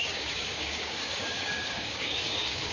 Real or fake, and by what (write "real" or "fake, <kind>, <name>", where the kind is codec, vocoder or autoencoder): fake, codec, DAC